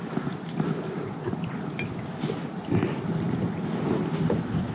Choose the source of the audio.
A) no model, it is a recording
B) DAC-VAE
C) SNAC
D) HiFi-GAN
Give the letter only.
A